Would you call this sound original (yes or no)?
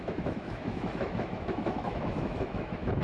no